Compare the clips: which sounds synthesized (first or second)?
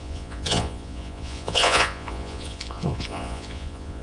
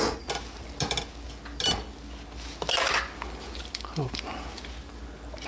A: first